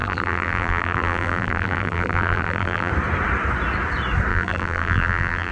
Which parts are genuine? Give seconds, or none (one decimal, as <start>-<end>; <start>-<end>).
2.9-4.3